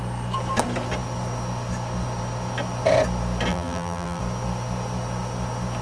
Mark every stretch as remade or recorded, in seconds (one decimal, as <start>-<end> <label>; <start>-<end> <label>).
0.0-3.5 recorded; 3.5-4.2 remade; 4.2-5.8 recorded